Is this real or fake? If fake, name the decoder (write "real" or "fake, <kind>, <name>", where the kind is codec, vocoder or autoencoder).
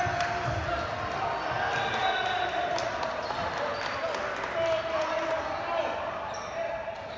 real